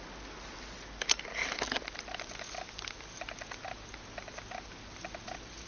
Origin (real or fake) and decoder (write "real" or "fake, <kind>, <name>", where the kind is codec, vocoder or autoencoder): real